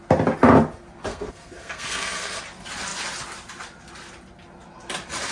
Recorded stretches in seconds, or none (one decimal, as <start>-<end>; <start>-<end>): 0.0-1.1; 2.4-5.3